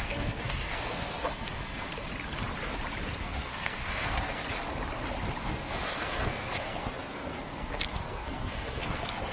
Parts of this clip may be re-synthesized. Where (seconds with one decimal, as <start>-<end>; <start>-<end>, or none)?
0.0-1.9; 3.2-4.4; 5.4-9.3